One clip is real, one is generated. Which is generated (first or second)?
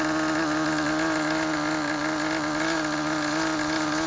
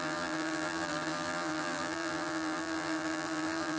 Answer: second